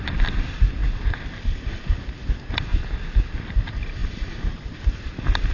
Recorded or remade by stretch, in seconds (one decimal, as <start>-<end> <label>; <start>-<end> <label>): 0.0-4.0 recorded; 4.0-4.9 remade; 4.9-5.5 recorded